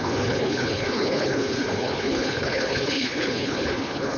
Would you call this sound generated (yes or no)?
yes